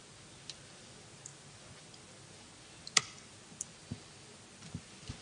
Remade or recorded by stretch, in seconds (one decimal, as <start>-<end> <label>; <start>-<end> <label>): 0.0-5.2 recorded